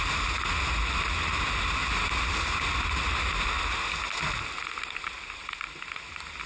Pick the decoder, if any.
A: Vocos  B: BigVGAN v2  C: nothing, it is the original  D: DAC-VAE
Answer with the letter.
C